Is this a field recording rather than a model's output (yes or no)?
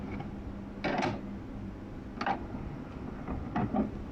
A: yes